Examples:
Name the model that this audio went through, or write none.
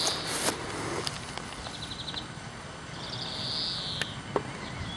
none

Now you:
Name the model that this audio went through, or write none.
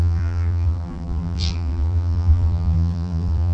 vocoder, BigVGAN v2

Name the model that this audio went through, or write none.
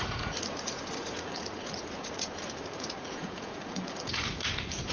vocoder, Vocos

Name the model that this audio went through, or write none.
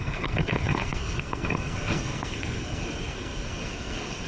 codec, SNAC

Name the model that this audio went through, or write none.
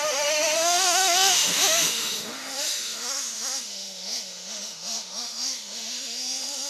autoencoder, DAC-VAE